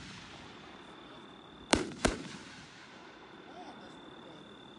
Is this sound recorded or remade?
remade